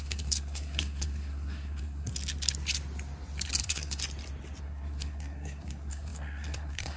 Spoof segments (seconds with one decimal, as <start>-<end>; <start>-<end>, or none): 0.0-2.1; 3.6-4.0; 4.6-7.0